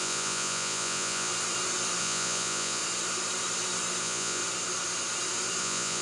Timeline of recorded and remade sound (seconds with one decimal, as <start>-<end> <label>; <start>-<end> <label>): 0.0-1.3 remade; 1.3-2.0 recorded; 2.0-2.8 remade; 2.8-4.0 recorded; 4.0-4.4 remade; 4.4-5.6 recorded; 5.6-6.0 remade